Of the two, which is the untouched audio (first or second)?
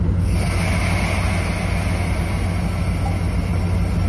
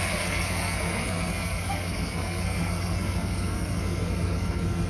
first